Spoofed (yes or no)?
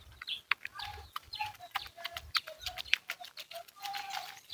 no